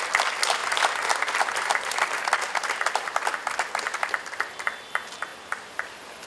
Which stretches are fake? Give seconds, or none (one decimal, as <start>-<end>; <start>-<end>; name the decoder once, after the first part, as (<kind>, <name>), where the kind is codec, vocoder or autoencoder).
none